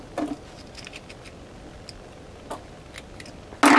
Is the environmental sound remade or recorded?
recorded